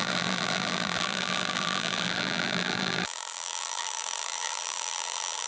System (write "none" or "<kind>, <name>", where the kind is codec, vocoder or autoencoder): vocoder, BigVGAN v2